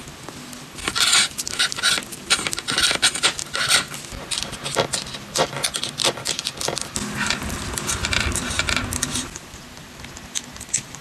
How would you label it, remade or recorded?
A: recorded